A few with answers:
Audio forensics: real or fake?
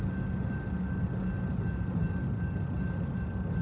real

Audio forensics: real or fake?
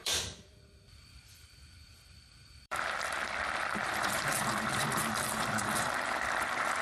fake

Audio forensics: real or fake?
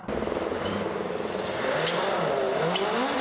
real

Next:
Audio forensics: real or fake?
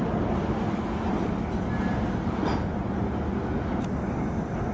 real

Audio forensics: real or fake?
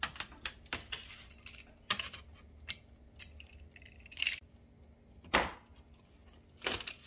real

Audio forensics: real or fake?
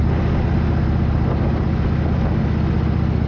real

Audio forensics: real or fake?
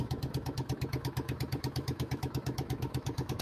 fake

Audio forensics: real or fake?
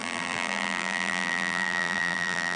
fake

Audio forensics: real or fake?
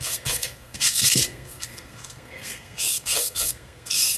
fake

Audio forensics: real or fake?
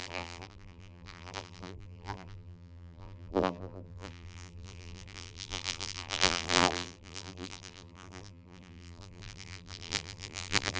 fake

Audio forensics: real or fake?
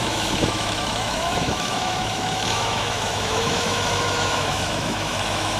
fake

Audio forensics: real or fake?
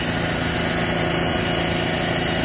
real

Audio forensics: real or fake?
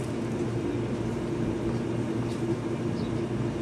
real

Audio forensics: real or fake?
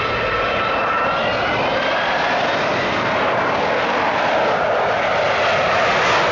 real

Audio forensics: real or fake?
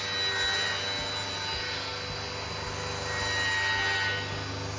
real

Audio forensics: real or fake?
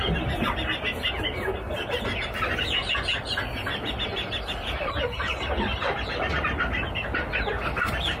real